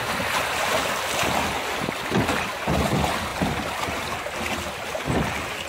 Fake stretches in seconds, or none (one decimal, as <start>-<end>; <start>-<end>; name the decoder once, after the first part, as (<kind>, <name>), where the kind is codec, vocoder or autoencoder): none